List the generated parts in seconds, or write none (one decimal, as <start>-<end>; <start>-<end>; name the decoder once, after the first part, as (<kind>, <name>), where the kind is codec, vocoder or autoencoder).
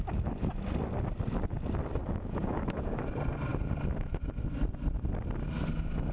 2.0-3.0 (codec, DAC)